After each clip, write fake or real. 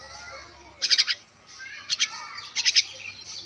real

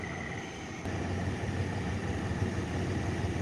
real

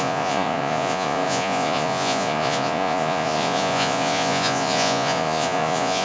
fake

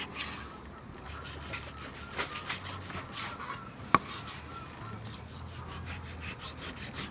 real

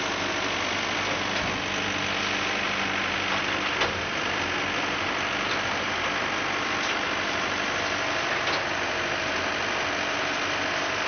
real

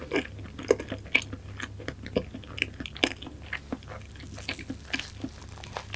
real